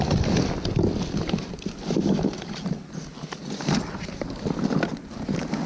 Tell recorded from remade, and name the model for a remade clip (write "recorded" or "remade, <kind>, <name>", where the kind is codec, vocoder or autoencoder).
recorded